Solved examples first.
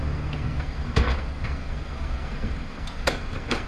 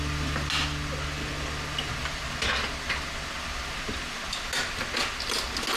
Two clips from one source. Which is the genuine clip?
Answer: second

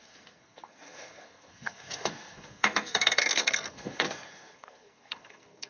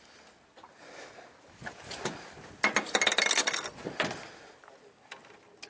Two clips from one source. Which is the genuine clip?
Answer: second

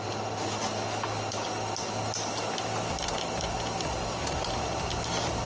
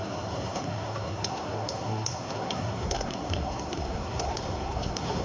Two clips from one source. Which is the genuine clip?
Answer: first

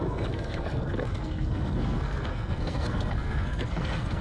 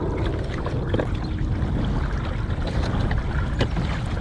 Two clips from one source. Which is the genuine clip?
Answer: second